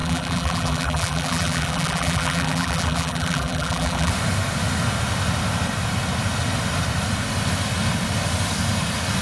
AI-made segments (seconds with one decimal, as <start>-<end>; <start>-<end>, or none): 0.0-4.1

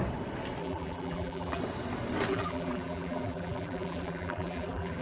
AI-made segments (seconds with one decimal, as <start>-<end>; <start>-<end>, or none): 0.6-1.6; 2.3-5.0

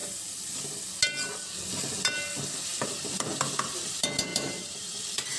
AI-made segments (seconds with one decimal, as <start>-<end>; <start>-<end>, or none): 4.3-5.4

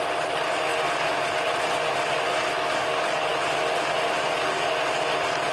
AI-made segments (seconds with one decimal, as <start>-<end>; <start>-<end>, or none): none

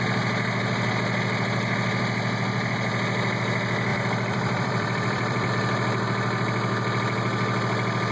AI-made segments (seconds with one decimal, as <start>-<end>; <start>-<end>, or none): 3.9-5.5